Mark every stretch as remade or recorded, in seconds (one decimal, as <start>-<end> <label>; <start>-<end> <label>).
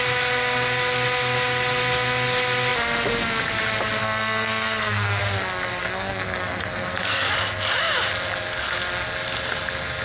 0.0-4.0 recorded; 4.0-5.2 remade; 5.2-5.8 recorded; 5.8-7.3 remade; 7.3-10.0 recorded